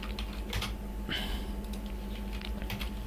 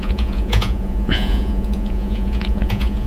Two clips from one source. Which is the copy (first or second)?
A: second